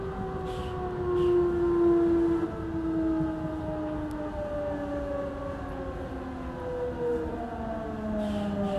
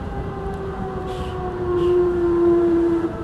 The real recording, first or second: first